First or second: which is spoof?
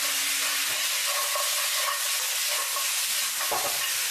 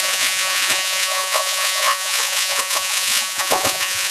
second